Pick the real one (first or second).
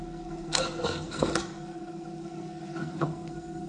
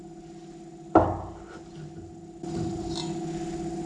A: second